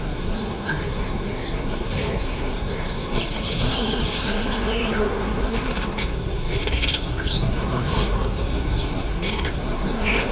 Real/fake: fake